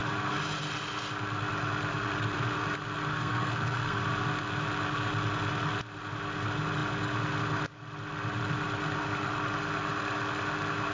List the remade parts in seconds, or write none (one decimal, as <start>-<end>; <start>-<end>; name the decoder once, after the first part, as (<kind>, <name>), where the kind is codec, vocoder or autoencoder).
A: 3.1-4.0 (codec, SNAC)